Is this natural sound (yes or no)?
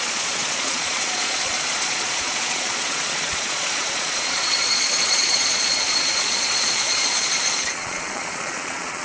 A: no